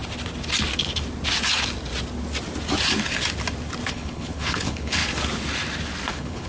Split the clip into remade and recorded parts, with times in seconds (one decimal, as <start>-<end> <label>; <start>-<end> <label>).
0.0-3.9 recorded; 3.9-5.0 remade; 5.0-6.1 recorded; 6.1-6.5 remade

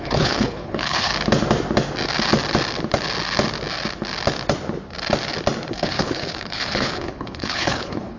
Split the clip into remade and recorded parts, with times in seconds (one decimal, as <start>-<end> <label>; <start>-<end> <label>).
0.0-1.1 remade; 1.1-5.7 recorded; 5.7-8.2 remade

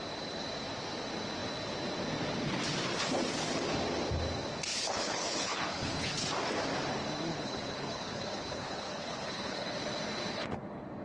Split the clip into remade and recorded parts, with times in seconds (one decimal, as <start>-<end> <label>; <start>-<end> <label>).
0.0-4.7 recorded; 4.7-6.2 remade; 6.2-7.3 recorded; 7.3-9.7 remade; 9.7-11.0 recorded

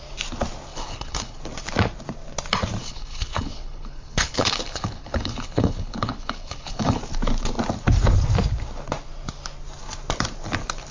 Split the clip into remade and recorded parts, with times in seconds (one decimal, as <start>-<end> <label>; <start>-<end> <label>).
0.0-0.7 recorded; 0.7-1.4 remade; 1.4-2.8 recorded; 2.8-7.0 remade; 7.0-10.9 recorded

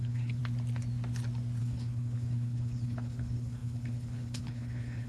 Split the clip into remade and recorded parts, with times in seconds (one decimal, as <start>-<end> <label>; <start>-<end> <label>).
0.0-0.4 remade; 0.4-1.6 recorded; 1.6-5.1 remade

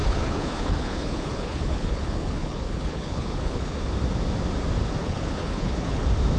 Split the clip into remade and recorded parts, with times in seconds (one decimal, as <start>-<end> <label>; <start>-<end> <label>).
0.0-3.8 remade; 3.8-5.0 recorded; 5.0-6.0 remade; 6.0-6.4 recorded